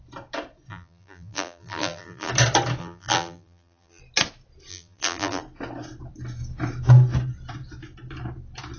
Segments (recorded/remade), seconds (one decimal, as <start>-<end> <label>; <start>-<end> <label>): 0.0-0.7 recorded; 0.7-2.3 remade; 2.3-2.8 recorded; 2.8-4.0 remade; 4.0-4.7 recorded; 4.7-5.4 remade; 5.4-8.8 recorded